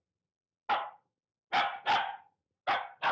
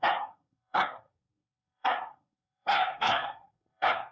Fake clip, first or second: second